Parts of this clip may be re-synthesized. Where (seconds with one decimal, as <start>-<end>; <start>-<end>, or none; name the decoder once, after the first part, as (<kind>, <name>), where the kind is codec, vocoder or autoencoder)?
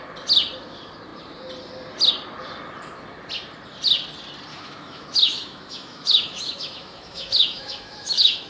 4.5-8.5 (autoencoder, DAC-VAE)